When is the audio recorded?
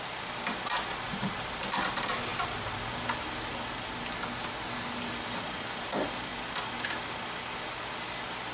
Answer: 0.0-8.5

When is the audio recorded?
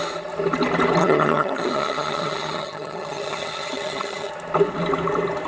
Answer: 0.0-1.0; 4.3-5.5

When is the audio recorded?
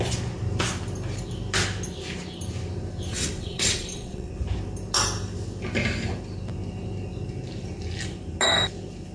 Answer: 0.0-3.1; 4.3-9.1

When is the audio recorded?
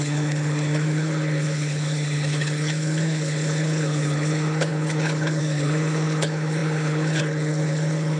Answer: none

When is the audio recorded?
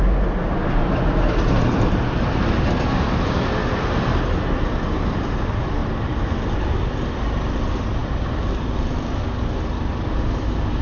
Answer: 0.0-10.8